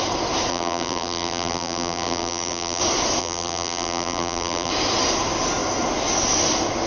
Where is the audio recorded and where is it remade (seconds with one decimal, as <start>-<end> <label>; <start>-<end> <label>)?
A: 0.0-0.5 recorded; 0.5-2.8 remade; 2.8-3.2 recorded; 3.2-4.7 remade; 4.7-6.9 recorded